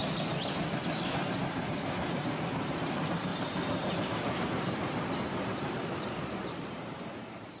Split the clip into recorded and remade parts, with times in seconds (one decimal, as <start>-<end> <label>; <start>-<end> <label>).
0.0-1.5 recorded; 1.5-3.3 remade; 3.3-5.1 recorded; 5.1-7.6 remade